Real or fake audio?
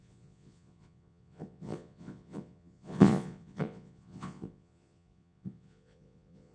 fake